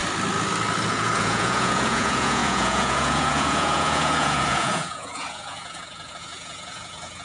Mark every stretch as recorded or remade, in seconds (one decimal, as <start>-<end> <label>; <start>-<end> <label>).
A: 0.0-0.9 recorded; 0.9-7.2 remade